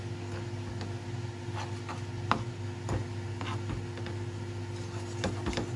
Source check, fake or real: real